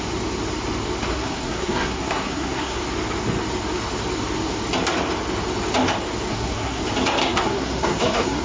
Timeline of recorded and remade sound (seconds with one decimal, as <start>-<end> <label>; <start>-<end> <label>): 0.0-1.1 recorded; 1.1-2.8 remade; 2.8-6.3 recorded; 6.3-6.8 remade; 6.8-7.2 recorded; 7.2-8.4 remade